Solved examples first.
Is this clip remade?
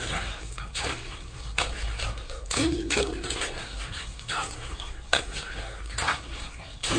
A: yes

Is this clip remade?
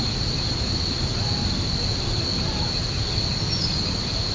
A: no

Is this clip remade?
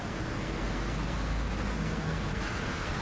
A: yes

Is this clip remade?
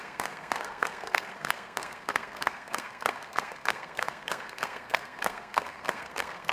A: yes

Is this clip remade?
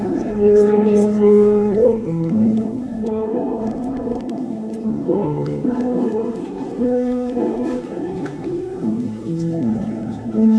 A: yes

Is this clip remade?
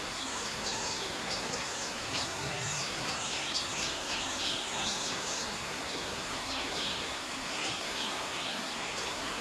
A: yes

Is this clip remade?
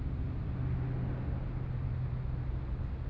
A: no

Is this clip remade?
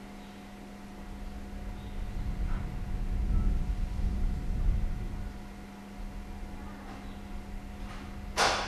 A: no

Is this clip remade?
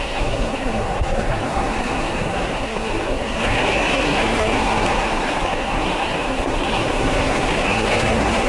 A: yes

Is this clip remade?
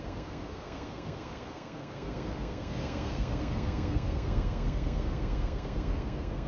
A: yes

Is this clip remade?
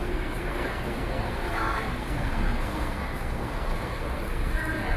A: yes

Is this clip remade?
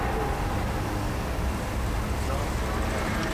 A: no